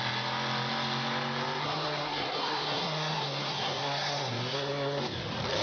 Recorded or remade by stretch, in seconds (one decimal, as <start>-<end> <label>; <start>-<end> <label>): 0.0-1.6 recorded; 1.6-5.0 remade; 5.0-5.6 recorded